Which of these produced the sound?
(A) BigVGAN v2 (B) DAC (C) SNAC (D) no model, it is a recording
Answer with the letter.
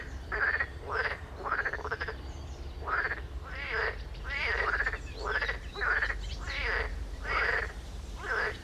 A